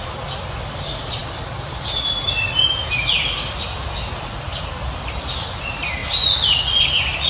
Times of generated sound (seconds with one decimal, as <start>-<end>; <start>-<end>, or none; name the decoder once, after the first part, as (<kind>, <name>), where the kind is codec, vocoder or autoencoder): none